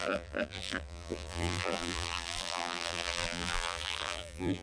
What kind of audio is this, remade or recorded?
remade